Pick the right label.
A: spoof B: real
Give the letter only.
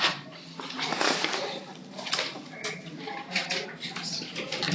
B